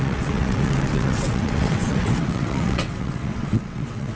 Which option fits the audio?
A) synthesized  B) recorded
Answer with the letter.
A